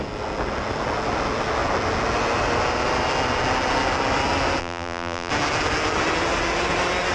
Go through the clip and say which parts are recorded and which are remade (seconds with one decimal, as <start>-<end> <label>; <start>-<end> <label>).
0.0-4.6 recorded; 4.6-5.3 remade; 5.3-7.1 recorded